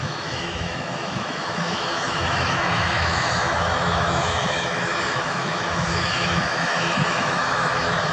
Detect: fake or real fake